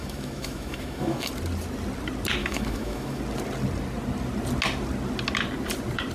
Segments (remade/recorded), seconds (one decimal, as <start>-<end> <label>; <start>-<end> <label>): 0.0-1.3 remade; 1.3-2.4 recorded; 2.4-3.2 remade; 3.2-6.1 recorded